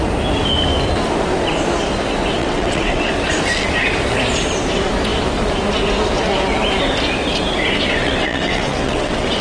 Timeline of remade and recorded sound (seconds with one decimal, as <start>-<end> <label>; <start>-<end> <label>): 0.0-2.4 recorded; 2.4-3.1 remade; 3.1-8.0 recorded; 8.0-9.4 remade